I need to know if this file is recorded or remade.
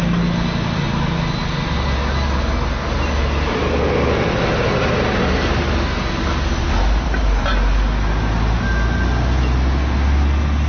recorded